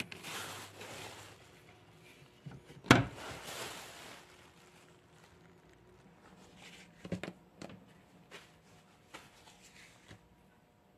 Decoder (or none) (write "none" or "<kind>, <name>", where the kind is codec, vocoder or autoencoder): none